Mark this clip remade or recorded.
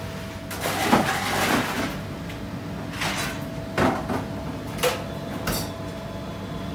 recorded